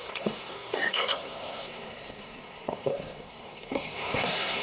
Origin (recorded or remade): remade